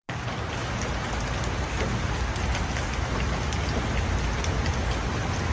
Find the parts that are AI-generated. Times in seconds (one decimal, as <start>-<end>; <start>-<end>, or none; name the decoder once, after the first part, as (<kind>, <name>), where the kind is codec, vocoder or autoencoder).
none